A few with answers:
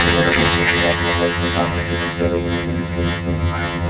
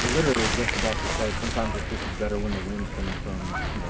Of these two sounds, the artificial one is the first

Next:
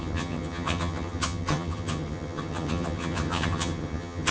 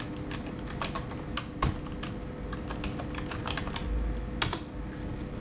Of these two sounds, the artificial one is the first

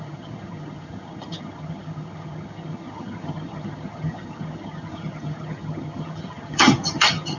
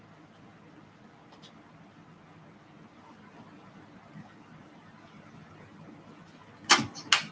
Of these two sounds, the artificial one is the first